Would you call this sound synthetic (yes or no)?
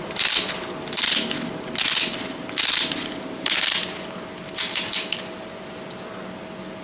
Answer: no